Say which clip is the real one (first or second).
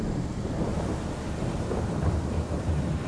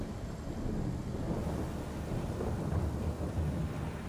second